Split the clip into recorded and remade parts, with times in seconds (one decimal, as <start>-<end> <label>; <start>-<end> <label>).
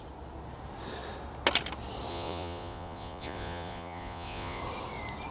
0.0-2.1 recorded; 2.1-4.6 remade; 4.6-5.3 recorded